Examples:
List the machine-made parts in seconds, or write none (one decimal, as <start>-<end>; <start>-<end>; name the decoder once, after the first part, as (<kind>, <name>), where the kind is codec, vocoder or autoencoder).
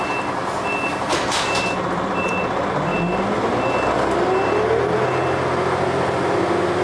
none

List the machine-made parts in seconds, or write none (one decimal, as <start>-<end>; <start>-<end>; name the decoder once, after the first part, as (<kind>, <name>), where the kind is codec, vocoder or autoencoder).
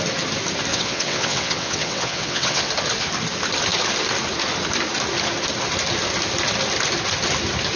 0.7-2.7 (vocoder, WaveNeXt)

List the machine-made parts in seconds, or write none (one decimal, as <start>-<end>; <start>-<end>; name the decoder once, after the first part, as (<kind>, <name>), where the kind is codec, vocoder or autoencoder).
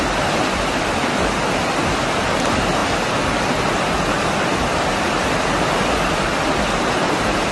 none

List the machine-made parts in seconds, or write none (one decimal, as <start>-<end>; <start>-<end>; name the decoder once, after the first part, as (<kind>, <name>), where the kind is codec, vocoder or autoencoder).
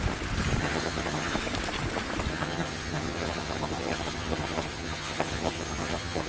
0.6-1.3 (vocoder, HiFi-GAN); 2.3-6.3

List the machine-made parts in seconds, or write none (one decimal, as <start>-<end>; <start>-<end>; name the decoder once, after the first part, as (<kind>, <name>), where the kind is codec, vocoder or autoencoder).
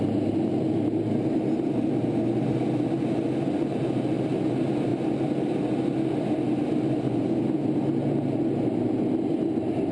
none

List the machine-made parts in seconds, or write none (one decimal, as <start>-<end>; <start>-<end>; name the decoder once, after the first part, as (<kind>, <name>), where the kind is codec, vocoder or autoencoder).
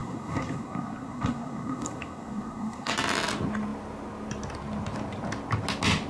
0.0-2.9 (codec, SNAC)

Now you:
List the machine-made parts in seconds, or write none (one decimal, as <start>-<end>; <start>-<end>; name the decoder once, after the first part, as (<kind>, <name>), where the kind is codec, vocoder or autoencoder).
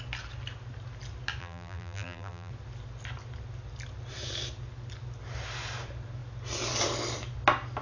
1.4-2.5 (vocoder, BigVGAN v2)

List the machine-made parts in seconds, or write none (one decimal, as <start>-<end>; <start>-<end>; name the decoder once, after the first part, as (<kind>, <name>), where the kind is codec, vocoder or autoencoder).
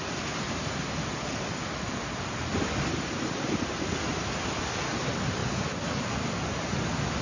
none